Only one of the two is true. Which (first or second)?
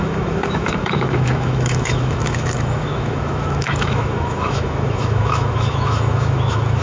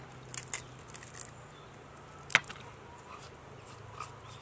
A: second